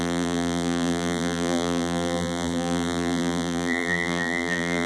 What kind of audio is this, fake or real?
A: fake